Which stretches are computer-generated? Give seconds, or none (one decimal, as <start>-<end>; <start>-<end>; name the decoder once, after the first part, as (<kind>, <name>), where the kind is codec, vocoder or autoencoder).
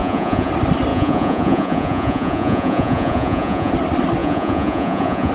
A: 0.0-0.5 (vocoder, Vocos); 0.9-3.7; 4.2-5.3